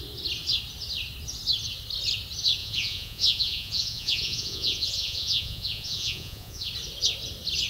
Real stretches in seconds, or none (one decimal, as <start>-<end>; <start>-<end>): 0.0-2.6; 6.7-7.7